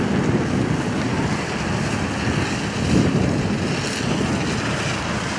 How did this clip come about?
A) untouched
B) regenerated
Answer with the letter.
A